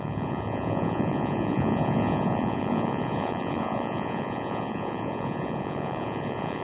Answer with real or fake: fake